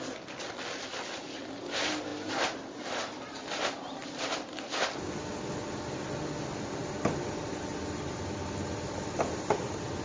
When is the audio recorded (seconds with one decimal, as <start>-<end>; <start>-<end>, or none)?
0.0-10.0